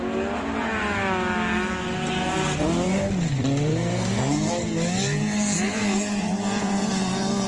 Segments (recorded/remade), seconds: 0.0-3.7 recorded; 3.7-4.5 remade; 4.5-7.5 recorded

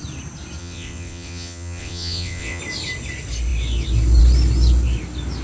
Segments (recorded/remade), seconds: 0.0-0.6 recorded; 0.6-2.6 remade; 2.6-5.4 recorded

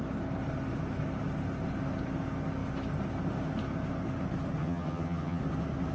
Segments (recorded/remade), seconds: 0.0-4.6 recorded; 4.6-5.4 remade; 5.4-5.9 recorded